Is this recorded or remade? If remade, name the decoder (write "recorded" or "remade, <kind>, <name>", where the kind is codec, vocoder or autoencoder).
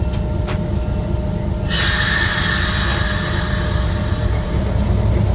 recorded